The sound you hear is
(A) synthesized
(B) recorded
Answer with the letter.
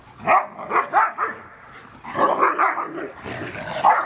B